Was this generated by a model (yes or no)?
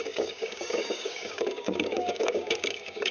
yes